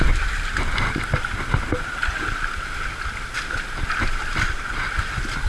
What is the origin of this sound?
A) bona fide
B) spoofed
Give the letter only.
A